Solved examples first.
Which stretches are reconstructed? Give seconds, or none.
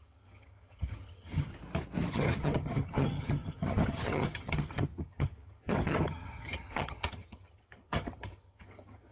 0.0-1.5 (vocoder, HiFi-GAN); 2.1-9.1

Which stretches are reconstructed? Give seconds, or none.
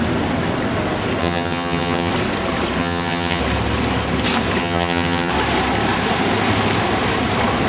1.2-2.1 (vocoder, HiFi-GAN); 2.8-3.4; 4.6-5.3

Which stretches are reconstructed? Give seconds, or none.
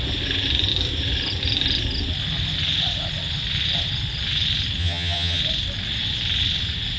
4.8-5.4 (vocoder, HiFi-GAN)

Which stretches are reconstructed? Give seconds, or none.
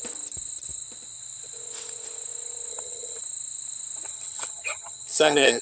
2.7-3.2 (vocoder, HiFi-GAN); 4.1-5.6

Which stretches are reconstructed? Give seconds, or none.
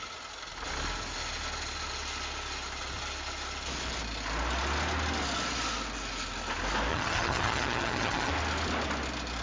6.9-8.3 (vocoder, HiFi-GAN)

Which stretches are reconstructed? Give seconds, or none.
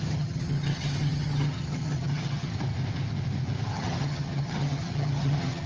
0.0-2.5 (vocoder, HiFi-GAN); 3.7-5.7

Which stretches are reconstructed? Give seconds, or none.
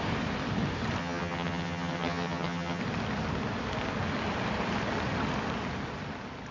1.0-2.8 (vocoder, HiFi-GAN)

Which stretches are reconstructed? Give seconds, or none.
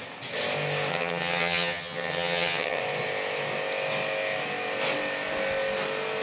0.9-2.8 (vocoder, HiFi-GAN)